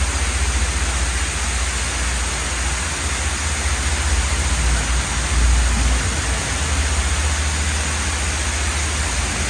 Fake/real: real